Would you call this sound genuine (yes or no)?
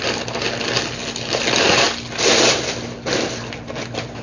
yes